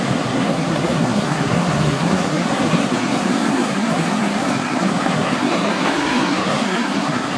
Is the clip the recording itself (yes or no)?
no